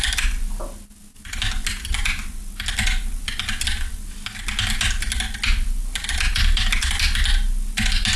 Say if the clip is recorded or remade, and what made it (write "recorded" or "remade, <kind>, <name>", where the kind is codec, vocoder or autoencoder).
recorded